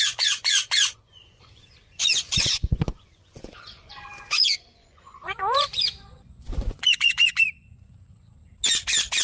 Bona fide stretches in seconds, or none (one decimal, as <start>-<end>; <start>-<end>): 8.4-9.2